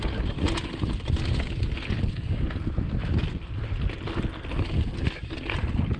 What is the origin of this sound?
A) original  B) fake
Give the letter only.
A